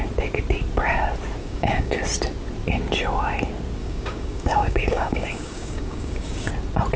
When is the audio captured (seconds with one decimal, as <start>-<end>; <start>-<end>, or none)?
0.0-1.4; 2.0-3.8; 6.5-7.0

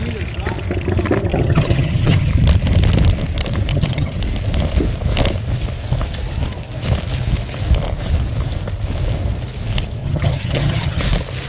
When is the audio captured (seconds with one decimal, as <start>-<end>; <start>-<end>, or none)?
0.0-1.3; 2.3-3.7; 4.2-10.0; 11.0-11.5